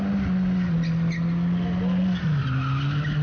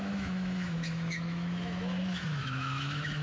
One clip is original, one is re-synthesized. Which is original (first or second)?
first